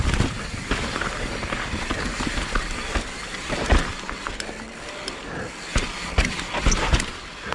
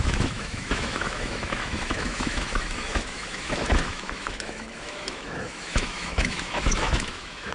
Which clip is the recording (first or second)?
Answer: first